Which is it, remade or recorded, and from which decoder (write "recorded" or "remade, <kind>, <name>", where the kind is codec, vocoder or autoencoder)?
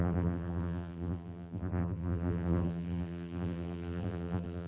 remade, vocoder, BigVGAN v2